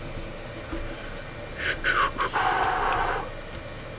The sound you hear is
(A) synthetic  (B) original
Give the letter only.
B